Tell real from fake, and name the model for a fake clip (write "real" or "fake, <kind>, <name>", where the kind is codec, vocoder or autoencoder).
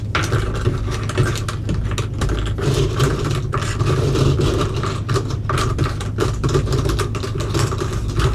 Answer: real